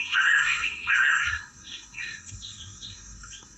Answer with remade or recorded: remade